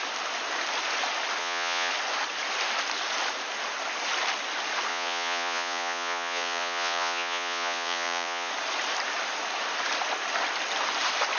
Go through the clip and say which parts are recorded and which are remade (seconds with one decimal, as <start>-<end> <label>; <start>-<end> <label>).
0.0-1.4 recorded; 1.4-1.9 remade; 1.9-4.9 recorded; 4.9-8.5 remade; 8.5-11.4 recorded